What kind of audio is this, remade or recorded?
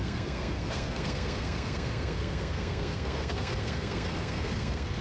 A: remade